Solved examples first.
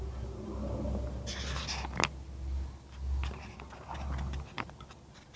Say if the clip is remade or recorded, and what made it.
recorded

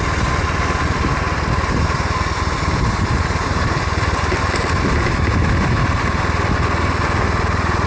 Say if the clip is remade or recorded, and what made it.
recorded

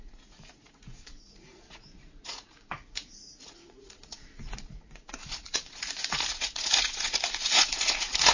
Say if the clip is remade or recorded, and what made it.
remade, vocoder, Vocos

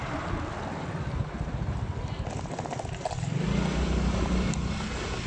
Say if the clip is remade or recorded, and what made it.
recorded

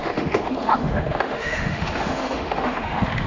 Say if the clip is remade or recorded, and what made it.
remade, autoencoder, DAC-VAE